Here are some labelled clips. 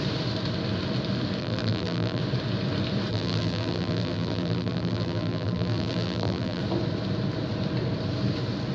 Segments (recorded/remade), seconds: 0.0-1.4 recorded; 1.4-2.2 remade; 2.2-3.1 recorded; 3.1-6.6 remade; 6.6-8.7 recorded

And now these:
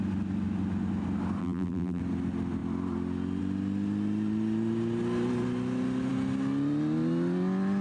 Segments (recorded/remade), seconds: 0.0-1.4 recorded; 1.4-2.0 remade; 2.0-7.8 recorded

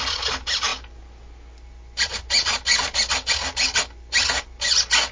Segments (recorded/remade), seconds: 0.0-5.1 recorded

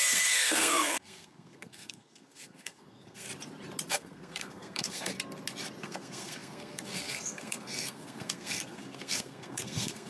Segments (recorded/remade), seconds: 0.0-3.3 remade; 3.3-3.9 recorded; 3.9-5.1 remade; 5.1-5.8 recorded; 5.8-10.1 remade

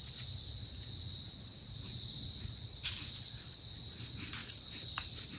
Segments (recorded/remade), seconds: 0.0-5.4 recorded